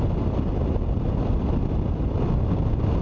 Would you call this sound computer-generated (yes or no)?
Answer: no